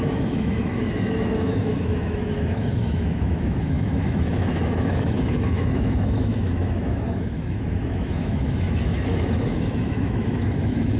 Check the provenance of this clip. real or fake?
fake